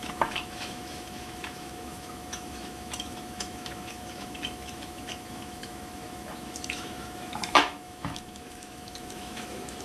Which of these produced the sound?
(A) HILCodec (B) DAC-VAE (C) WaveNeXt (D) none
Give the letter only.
B